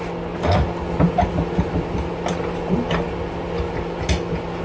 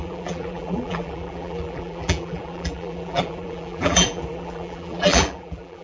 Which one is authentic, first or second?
first